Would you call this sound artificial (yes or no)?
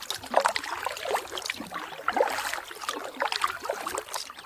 no